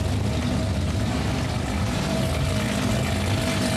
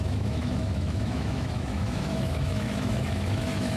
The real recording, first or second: first